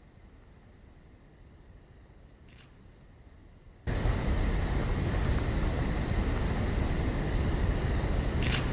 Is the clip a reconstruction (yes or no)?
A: no